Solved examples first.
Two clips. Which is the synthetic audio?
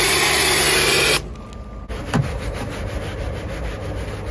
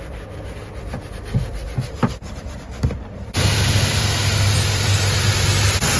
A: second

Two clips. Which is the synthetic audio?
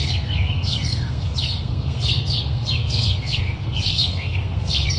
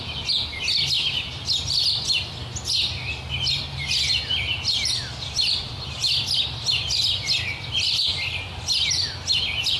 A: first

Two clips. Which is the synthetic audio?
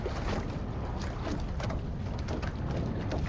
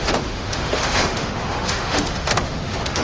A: second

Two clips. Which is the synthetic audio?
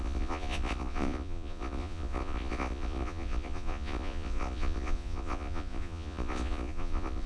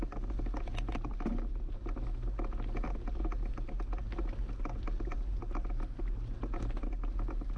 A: first